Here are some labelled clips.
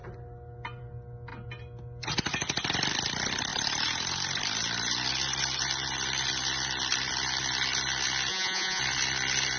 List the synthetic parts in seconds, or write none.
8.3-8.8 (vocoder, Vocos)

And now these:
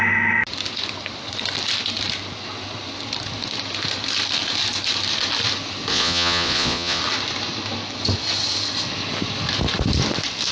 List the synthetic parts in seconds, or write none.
5.9-7.0 (vocoder, Vocos)

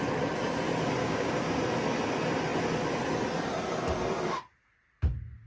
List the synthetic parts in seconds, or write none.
1.0-1.6 (codec, DAC)

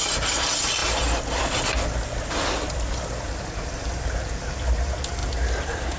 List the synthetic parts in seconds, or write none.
none

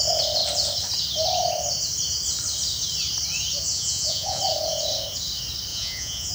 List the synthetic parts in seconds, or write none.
3.7-4.4 (vocoder, Vocos); 5.7-6.3